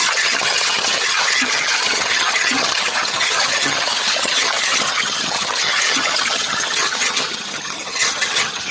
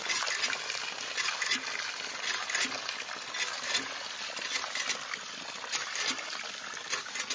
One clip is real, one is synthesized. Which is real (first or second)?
second